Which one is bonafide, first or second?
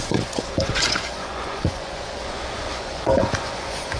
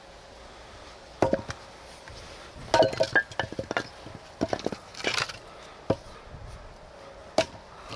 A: second